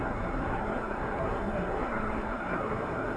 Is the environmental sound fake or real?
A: fake